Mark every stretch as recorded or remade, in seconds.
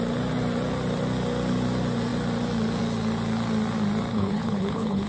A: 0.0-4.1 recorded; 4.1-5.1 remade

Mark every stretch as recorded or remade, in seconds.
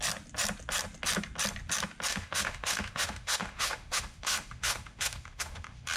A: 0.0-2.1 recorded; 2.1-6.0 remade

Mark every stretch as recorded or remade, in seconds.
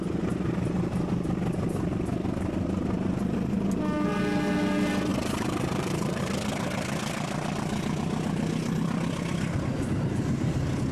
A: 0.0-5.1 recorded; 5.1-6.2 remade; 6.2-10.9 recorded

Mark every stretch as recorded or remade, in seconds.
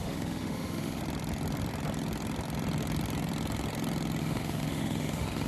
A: 0.0-1.0 remade; 1.0-4.2 recorded; 4.2-5.5 remade